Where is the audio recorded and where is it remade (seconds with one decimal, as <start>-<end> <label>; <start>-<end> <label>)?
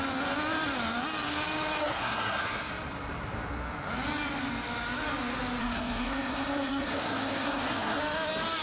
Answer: 0.0-1.8 recorded; 1.8-2.7 remade; 2.7-5.6 recorded; 5.6-8.0 remade; 8.0-8.6 recorded